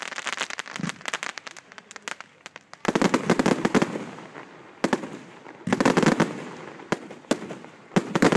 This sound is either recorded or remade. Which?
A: recorded